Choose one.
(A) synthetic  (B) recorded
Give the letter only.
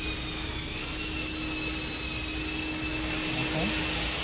B